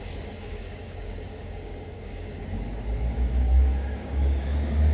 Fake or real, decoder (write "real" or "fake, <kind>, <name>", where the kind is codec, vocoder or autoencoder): fake, codec, DAC